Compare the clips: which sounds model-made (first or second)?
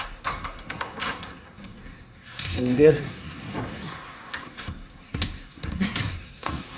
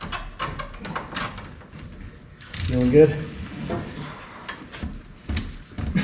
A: first